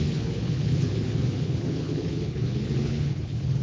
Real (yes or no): no